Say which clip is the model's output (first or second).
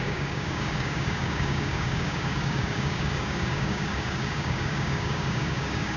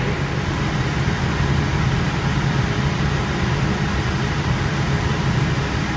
first